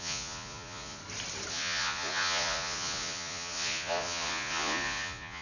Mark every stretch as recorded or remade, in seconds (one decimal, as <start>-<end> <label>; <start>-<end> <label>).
0.0-1.0 remade; 1.0-1.5 recorded; 1.5-5.4 remade